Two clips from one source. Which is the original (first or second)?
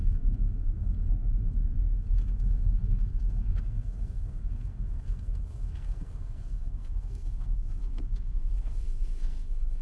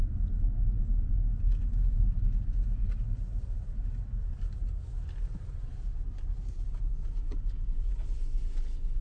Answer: second